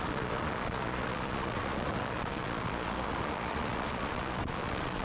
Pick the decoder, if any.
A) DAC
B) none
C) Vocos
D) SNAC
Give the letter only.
C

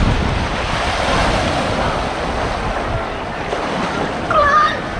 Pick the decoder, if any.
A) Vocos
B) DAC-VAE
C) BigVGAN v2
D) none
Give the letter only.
D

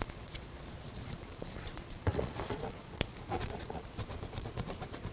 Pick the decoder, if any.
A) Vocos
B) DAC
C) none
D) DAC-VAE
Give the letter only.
A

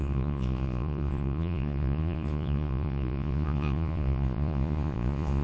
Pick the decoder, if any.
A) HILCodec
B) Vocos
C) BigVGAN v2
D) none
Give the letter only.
B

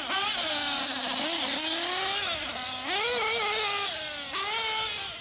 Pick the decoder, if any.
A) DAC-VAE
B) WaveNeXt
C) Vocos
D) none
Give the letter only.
D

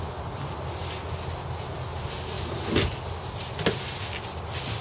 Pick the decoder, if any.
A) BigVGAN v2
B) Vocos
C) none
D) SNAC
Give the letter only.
C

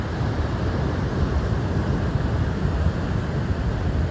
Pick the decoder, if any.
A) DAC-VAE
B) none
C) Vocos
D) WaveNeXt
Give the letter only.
B